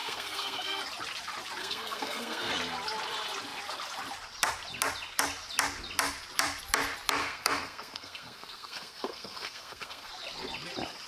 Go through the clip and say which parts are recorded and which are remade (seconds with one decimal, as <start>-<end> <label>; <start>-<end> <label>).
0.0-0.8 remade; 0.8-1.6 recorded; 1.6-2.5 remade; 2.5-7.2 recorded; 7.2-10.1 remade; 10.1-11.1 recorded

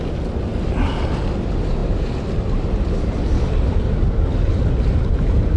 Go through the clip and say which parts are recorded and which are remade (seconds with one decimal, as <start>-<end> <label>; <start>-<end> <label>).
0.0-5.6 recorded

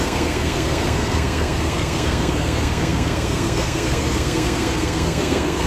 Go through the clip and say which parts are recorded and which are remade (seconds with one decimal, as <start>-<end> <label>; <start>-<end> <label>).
0.0-5.7 remade

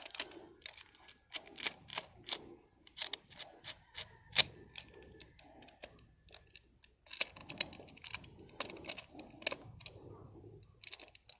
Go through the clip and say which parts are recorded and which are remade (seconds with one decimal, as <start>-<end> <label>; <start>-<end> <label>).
0.0-11.4 recorded

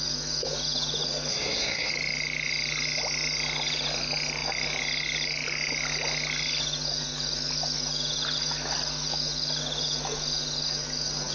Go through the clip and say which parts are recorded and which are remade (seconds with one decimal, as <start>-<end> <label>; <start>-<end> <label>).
0.0-1.3 recorded; 1.3-1.9 remade; 1.9-11.3 recorded